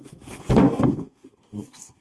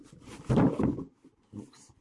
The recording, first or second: second